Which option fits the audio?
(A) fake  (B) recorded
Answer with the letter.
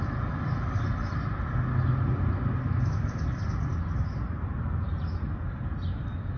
B